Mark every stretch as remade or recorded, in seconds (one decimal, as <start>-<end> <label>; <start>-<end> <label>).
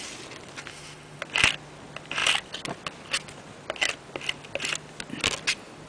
0.0-0.7 recorded; 0.7-1.2 remade; 1.2-5.9 recorded